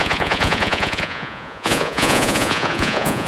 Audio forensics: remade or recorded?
remade